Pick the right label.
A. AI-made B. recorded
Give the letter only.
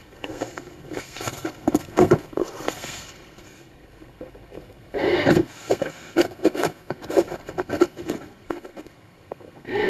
A